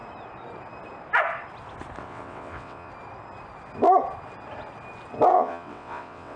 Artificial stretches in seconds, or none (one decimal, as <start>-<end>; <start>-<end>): 2.0-2.9; 5.3-6.4